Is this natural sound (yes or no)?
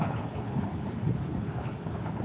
no